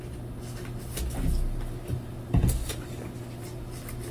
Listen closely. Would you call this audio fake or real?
real